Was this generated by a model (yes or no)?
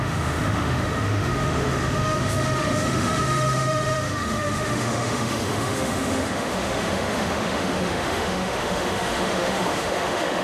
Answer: yes